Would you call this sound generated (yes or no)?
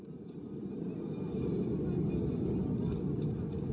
no